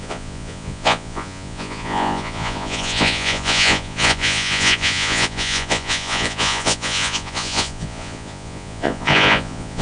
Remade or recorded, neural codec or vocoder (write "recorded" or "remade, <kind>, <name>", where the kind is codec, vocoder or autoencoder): remade, vocoder, Vocos